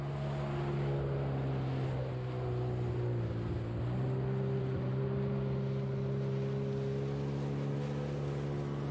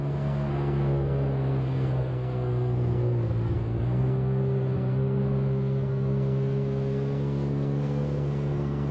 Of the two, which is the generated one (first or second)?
second